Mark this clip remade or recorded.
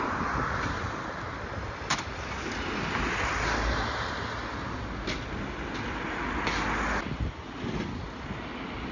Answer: recorded